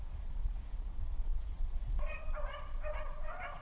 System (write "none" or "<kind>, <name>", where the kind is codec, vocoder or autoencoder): vocoder, Vocos